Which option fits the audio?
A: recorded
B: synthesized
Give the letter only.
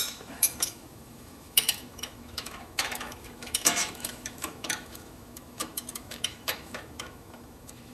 B